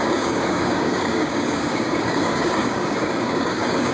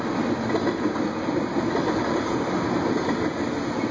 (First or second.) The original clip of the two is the second